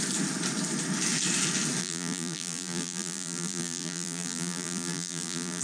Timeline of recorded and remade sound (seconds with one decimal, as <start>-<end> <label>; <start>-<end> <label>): 0.0-1.8 recorded; 1.8-5.6 remade